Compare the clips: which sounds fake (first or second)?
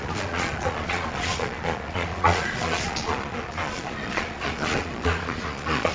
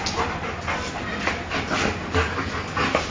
first